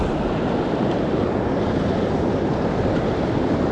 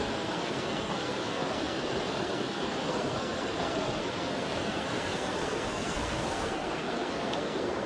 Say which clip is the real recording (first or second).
first